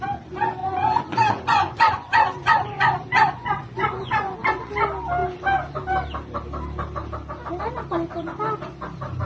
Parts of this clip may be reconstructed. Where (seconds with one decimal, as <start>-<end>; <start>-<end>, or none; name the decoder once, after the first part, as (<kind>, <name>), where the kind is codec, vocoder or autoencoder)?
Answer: 0.6-4.7 (vocoder, Vocos)